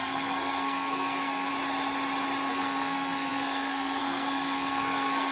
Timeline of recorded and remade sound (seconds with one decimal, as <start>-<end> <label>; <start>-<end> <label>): 0.0-1.5 remade; 1.5-2.5 recorded; 2.5-5.3 remade